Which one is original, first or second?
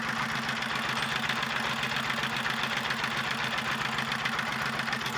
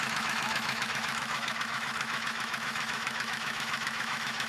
first